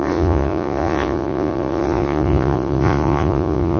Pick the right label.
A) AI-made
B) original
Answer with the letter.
A